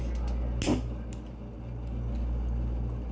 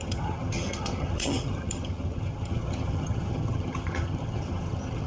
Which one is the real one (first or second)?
first